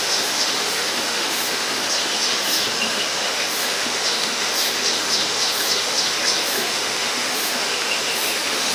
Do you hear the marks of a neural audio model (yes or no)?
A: yes